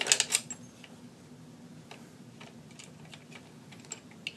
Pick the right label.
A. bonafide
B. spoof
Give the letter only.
A